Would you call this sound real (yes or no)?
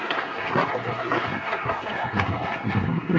no